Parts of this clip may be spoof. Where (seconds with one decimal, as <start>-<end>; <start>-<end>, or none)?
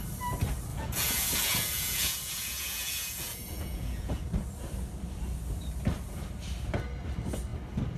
0.7-4.2